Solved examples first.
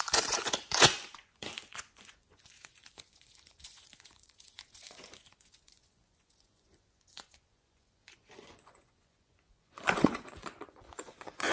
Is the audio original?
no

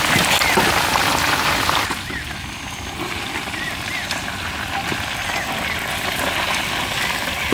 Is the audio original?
yes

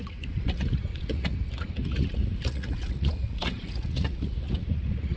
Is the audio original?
no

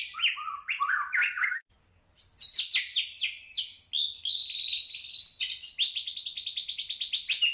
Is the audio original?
yes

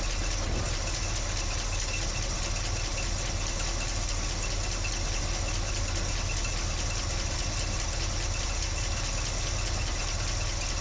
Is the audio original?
yes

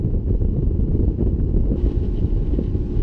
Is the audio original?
yes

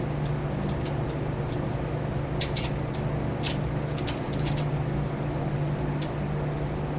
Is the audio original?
yes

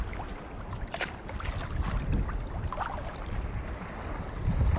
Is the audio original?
yes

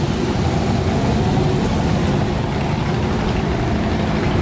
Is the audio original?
yes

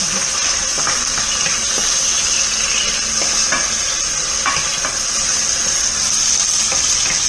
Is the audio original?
yes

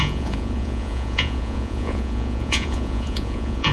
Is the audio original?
no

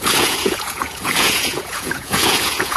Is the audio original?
no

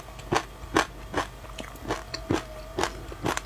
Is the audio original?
yes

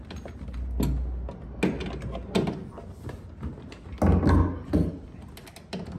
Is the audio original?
yes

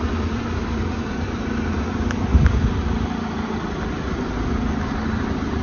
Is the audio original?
no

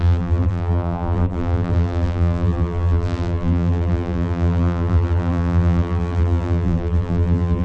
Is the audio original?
no